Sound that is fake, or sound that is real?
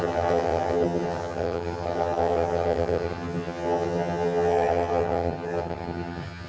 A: fake